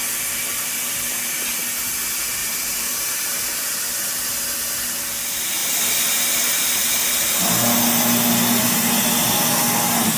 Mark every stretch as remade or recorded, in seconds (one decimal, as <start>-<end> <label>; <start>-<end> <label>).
0.0-2.4 recorded; 2.4-3.4 remade; 3.4-10.2 recorded